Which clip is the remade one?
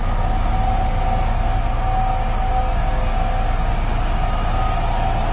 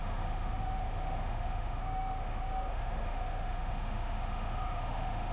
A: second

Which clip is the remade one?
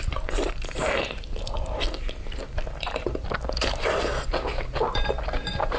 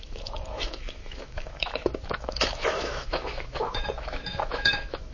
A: second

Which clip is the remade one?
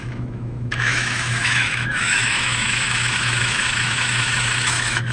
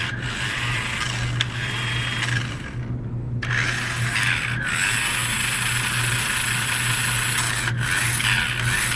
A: first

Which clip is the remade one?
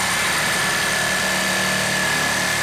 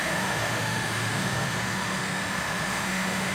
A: second